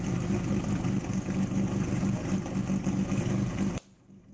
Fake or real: real